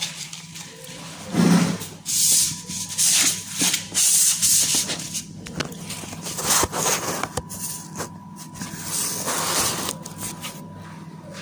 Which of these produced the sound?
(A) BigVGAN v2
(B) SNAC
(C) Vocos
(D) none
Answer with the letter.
D